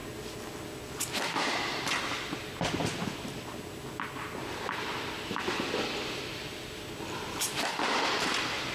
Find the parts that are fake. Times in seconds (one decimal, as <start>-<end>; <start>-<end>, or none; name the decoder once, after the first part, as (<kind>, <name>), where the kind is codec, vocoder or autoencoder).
none